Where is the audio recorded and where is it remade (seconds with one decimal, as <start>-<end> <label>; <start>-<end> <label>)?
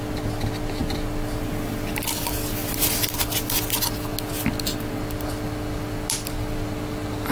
0.0-7.3 recorded